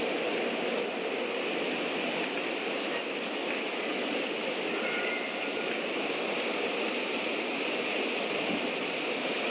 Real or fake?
real